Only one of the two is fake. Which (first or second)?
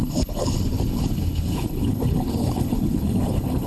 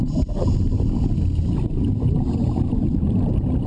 first